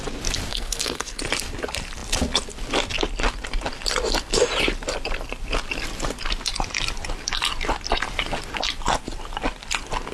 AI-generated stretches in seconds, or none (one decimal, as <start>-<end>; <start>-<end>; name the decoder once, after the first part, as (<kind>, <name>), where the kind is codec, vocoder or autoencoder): 0.5-1.2 (codec, SNAC)